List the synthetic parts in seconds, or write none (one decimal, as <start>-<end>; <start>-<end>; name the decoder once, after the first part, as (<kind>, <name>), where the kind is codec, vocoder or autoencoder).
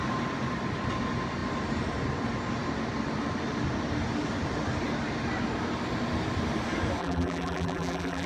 7.0-8.3 (vocoder, BigVGAN v2)